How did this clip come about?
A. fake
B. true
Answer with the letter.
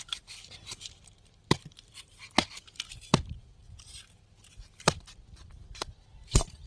A